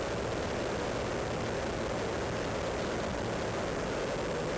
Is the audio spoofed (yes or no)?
no